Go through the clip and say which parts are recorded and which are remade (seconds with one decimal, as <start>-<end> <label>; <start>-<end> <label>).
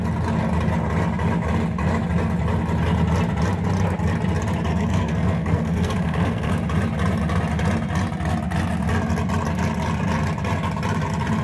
0.0-4.7 recorded; 4.7-6.5 remade; 6.5-11.4 recorded